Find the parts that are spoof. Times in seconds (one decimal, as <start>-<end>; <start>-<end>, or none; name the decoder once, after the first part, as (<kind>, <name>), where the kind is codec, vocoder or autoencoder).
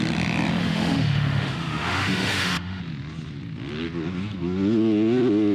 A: 0.6-2.8 (autoencoder, DAC-VAE)